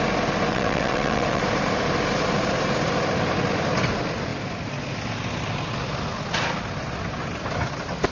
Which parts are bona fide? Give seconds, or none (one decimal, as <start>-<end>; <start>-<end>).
0.0-0.5; 1.4-8.1